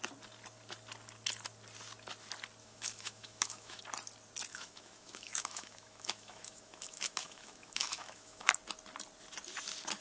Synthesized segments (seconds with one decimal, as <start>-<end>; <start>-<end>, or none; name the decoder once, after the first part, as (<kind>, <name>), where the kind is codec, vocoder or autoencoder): 2.6-3.8 (autoencoder, DAC-VAE); 4.5-8.5